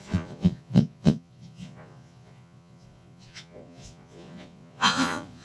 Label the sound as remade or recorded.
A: remade